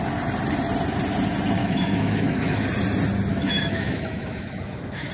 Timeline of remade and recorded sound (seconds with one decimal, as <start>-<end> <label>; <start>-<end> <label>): 0.0-1.6 recorded; 1.6-2.7 remade; 2.7-3.3 recorded; 3.3-5.1 remade